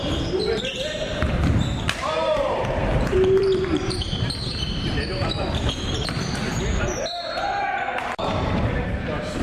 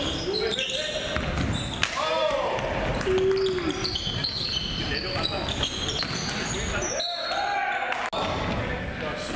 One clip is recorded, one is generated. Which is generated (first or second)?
first